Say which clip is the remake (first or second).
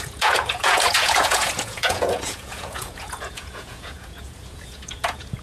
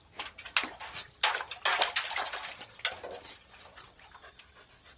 first